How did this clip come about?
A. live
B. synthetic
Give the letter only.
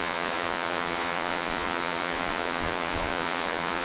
B